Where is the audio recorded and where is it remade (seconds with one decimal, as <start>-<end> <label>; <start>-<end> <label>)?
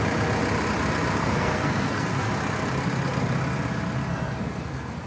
0.0-1.2 recorded; 1.2-2.3 remade; 2.3-4.1 recorded; 4.1-5.1 remade